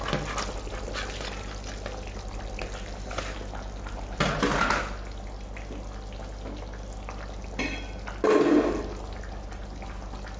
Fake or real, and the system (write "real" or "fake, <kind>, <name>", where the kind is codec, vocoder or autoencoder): real